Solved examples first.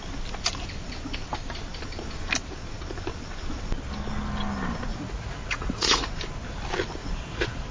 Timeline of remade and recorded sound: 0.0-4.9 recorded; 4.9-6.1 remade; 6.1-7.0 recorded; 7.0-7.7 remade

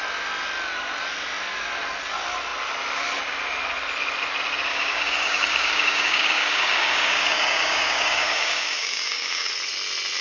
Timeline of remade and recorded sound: 0.0-4.7 recorded; 4.7-9.5 remade; 9.5-10.2 recorded

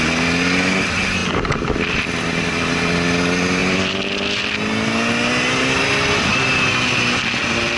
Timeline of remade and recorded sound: 0.0-7.8 recorded